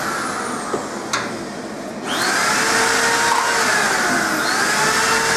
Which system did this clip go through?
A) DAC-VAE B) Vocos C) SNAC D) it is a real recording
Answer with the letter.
D